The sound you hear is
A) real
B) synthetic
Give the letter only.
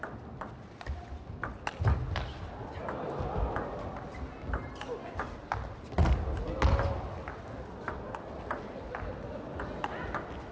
A